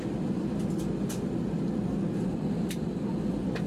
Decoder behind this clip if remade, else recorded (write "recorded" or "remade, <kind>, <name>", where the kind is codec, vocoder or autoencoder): recorded